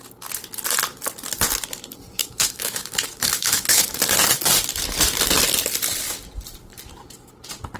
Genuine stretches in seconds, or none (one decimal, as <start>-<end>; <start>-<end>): 0.0-2.2; 4.0-7.8